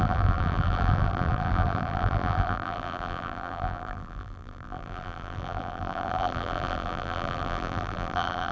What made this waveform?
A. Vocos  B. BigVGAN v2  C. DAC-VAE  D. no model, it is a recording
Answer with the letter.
B